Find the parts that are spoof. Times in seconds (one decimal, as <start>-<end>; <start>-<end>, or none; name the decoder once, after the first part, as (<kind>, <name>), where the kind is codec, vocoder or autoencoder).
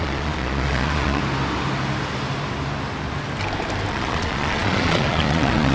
0.0-1.2 (vocoder, Vocos); 3.9-5.7